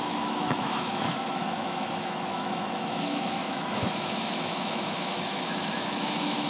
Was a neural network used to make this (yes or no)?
yes